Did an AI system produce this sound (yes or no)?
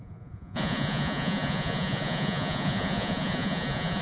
yes